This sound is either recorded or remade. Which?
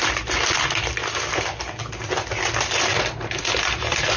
recorded